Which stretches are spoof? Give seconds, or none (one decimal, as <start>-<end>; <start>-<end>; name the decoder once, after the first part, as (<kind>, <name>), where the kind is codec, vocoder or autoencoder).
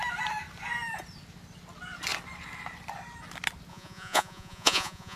3.7-5.2 (vocoder, Vocos)